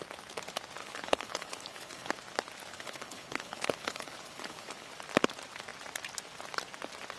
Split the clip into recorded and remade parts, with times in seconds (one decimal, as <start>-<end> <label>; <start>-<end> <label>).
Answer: 0.0-0.8 recorded; 0.8-2.1 remade; 2.1-2.7 recorded; 2.7-4.9 remade; 4.9-7.2 recorded